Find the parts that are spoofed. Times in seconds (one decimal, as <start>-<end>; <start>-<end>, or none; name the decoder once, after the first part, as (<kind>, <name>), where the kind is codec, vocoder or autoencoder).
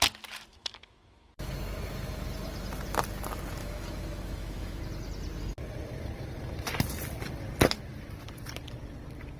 0.5-1.5 (autoencoder, DAC-VAE); 3.6-4.8